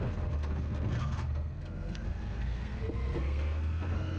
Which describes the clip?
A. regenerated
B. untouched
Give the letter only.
A